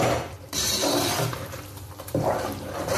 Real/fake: fake